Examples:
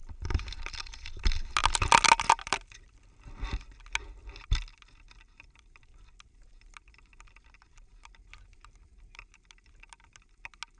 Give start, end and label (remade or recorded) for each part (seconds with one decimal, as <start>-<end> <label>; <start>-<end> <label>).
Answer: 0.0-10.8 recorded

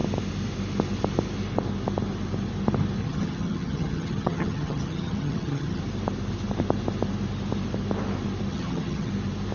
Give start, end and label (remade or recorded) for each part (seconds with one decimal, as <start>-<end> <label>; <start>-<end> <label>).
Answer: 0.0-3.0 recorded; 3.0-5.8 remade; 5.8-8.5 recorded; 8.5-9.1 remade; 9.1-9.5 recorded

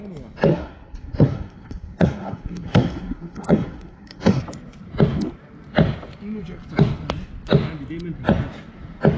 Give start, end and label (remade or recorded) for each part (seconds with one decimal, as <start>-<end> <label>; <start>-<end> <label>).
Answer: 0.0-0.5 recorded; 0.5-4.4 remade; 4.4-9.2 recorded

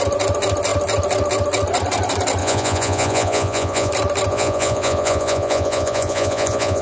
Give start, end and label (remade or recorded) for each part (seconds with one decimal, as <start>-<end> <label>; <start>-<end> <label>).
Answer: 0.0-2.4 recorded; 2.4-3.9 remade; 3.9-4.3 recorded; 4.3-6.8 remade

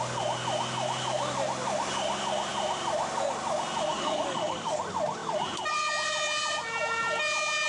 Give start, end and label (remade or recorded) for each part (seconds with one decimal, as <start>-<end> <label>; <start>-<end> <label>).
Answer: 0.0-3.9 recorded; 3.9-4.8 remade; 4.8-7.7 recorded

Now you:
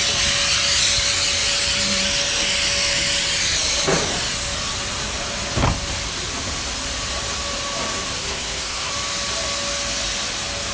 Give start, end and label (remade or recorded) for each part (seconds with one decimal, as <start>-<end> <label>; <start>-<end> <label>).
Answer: 0.0-8.2 recorded; 8.2-8.9 remade; 8.9-10.7 recorded